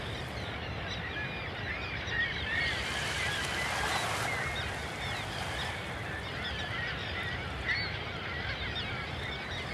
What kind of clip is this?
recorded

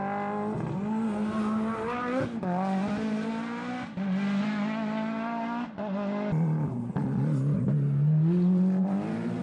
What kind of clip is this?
recorded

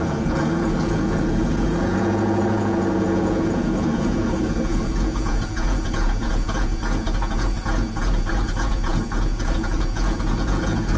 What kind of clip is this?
remade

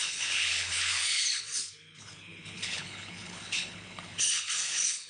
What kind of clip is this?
remade